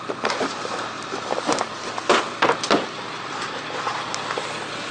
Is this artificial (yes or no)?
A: no